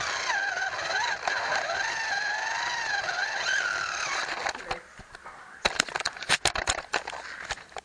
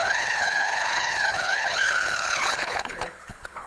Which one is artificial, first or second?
second